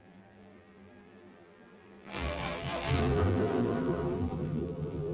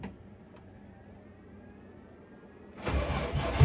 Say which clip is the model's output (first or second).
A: first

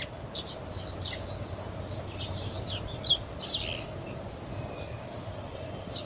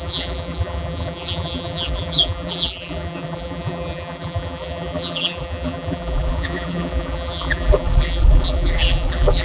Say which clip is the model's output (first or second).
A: second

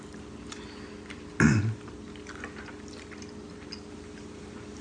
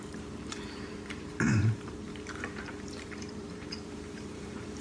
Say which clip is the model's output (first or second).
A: second